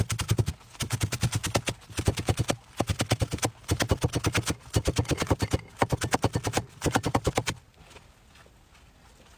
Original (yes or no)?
yes